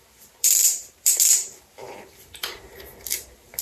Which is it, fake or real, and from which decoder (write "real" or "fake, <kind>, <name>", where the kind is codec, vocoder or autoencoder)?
fake, vocoder, BigVGAN v2